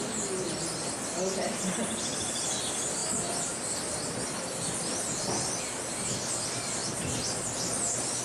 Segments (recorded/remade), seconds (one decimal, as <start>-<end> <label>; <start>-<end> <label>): 0.0-1.8 recorded; 1.8-2.5 remade; 2.5-8.2 recorded